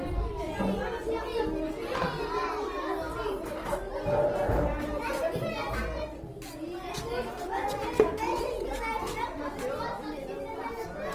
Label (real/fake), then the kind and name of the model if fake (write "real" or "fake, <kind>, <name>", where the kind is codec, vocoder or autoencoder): real